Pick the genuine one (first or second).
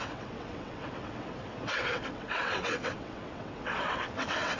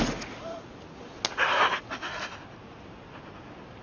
second